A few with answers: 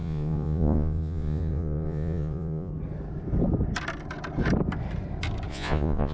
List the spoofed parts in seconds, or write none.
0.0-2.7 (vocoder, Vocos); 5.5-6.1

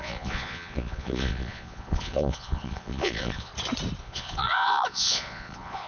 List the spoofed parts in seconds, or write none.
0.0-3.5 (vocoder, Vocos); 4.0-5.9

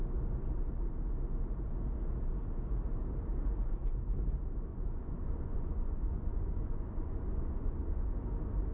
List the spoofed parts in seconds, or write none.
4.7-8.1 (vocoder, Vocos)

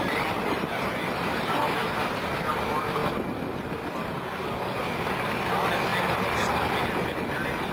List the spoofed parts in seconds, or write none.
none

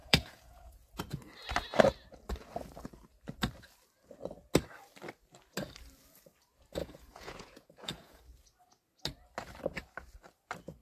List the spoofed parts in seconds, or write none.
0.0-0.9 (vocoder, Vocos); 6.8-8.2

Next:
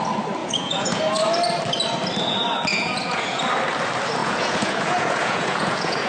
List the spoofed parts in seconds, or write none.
0.4-1.0 (vocoder, Vocos); 2.7-3.4; 4.2-6.1

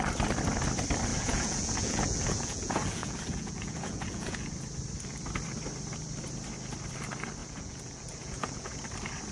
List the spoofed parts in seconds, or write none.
1.1-4.5 (vocoder, Vocos); 7.4-8.8